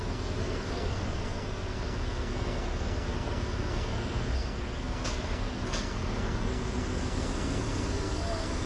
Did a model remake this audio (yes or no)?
yes